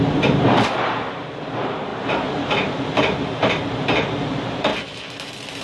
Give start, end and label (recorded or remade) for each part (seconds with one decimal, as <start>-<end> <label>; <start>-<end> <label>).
0.0-4.7 remade; 4.7-5.6 recorded